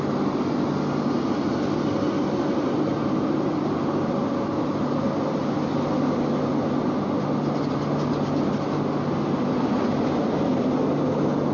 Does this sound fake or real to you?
real